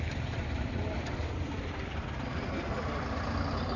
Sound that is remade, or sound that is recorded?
recorded